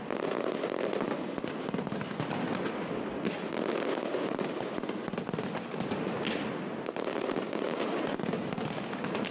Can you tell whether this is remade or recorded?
recorded